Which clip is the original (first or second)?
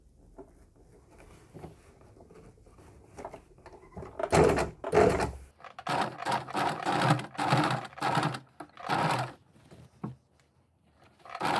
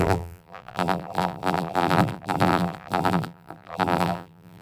first